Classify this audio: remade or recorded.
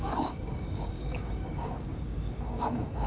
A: remade